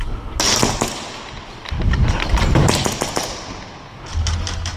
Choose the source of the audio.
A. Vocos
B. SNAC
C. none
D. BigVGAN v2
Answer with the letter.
C